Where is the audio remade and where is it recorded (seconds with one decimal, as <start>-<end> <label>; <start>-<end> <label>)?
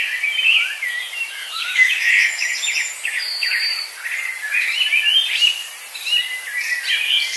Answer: 0.0-1.4 recorded; 1.4-2.5 remade; 2.5-7.4 recorded